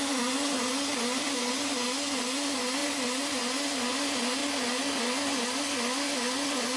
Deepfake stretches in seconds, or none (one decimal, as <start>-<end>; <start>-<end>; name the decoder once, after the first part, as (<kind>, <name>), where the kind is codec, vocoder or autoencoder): 0.9-1.5 (vocoder, BigVGAN v2); 2.8-3.3; 4.4-5.0